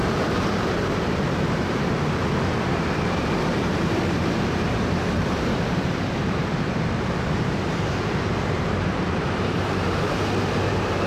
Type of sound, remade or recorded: remade